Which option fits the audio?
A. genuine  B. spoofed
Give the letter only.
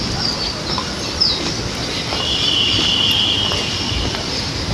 A